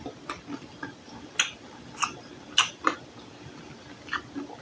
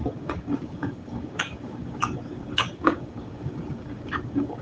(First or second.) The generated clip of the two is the second